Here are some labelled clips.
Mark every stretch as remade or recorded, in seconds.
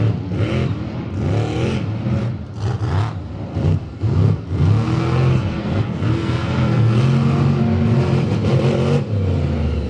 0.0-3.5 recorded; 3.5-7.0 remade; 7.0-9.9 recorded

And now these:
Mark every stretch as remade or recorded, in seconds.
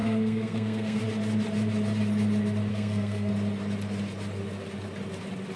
0.0-1.0 remade; 1.0-2.7 recorded; 2.7-3.3 remade; 3.3-5.6 recorded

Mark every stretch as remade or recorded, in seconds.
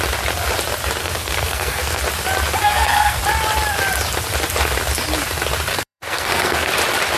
0.0-1.0 recorded; 1.0-2.0 remade; 2.0-2.6 recorded; 2.6-3.2 remade; 3.2-5.7 recorded; 5.7-6.7 remade; 6.7-7.2 recorded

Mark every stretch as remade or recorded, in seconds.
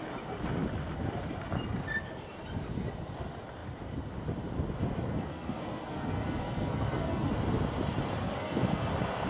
0.0-5.1 recorded; 5.1-7.3 remade; 7.3-8.2 recorded; 8.2-8.9 remade; 8.9-9.3 recorded